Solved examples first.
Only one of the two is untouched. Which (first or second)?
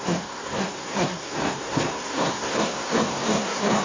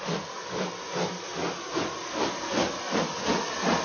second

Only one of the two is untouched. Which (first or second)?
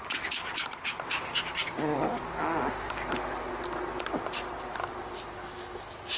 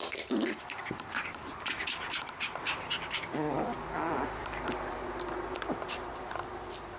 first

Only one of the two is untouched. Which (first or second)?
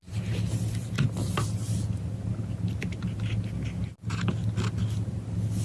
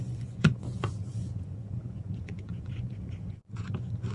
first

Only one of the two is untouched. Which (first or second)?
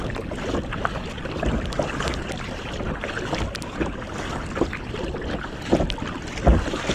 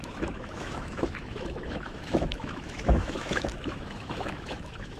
first